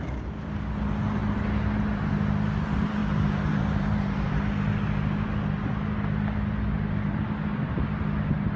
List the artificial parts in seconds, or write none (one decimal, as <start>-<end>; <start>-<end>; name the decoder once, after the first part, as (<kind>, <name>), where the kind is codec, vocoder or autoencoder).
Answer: none